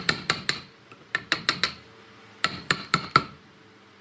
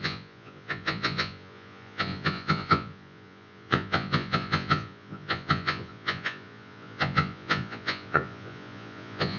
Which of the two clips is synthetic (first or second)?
second